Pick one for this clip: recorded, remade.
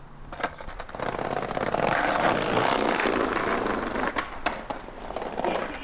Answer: recorded